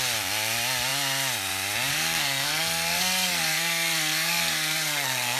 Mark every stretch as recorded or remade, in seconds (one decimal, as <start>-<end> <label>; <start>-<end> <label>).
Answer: 0.0-1.9 recorded; 1.9-5.4 remade